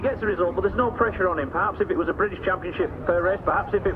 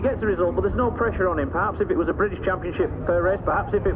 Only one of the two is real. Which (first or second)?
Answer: second